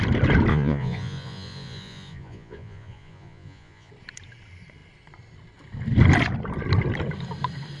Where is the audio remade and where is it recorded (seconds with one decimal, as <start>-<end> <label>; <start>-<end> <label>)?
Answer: 0.0-0.5 recorded; 0.5-3.9 remade; 3.9-7.8 recorded